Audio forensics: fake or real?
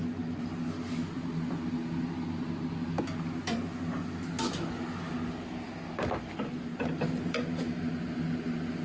real